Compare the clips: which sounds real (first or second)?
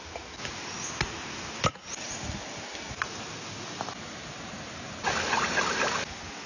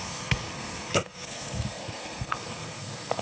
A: first